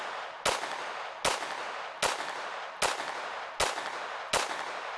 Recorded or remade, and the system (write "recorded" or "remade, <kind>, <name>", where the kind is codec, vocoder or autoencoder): recorded